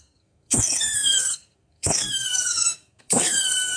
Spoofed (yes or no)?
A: yes